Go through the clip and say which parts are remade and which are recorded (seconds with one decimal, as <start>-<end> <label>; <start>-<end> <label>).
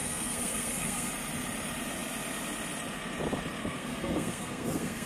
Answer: 0.0-1.1 remade; 1.1-3.6 recorded; 3.6-5.1 remade